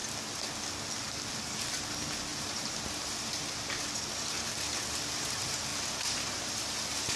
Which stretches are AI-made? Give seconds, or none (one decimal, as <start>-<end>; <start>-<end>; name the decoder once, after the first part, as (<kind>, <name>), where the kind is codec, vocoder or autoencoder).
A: 2.3-3.4 (vocoder, BigVGAN v2); 5.7-7.2